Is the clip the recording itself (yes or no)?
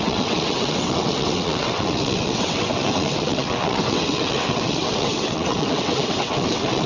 no